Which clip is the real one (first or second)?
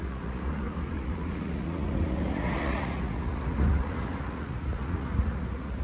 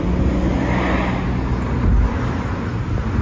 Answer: second